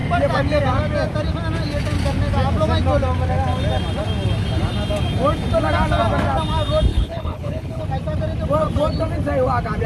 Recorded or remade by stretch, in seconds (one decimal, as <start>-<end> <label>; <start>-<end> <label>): 0.0-6.9 recorded; 6.9-7.8 remade; 7.8-9.9 recorded